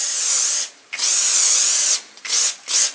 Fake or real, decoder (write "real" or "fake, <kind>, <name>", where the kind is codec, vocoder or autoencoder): real